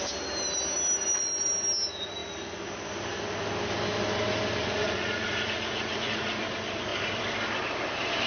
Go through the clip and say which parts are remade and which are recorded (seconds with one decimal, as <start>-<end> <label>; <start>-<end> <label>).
0.0-4.6 recorded; 4.6-6.4 remade; 6.4-8.3 recorded